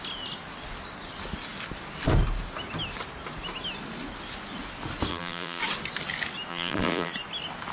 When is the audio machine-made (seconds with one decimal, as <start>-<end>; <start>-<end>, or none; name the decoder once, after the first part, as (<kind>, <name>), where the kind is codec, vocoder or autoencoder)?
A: 5.1-5.6 (vocoder, BigVGAN v2); 6.5-7.1